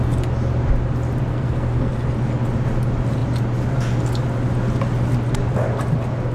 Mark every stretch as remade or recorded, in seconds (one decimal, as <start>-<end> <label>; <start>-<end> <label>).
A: 0.0-1.3 recorded; 1.3-1.9 remade; 1.9-6.3 recorded